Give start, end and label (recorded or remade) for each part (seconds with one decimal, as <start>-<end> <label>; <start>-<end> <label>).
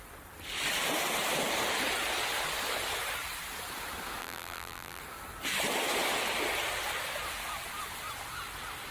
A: 0.0-4.2 recorded; 4.2-5.0 remade; 5.0-8.9 recorded